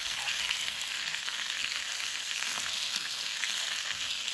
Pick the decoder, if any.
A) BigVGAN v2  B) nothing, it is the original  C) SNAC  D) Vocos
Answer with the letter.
C